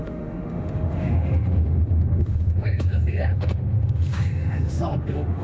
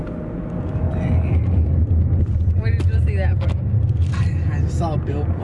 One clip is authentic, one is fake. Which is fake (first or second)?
first